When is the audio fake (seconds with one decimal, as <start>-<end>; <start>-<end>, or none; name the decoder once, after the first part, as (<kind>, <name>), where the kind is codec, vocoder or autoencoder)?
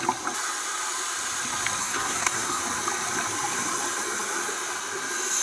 1.8-2.6 (codec, SNAC)